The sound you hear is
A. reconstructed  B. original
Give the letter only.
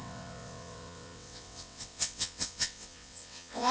A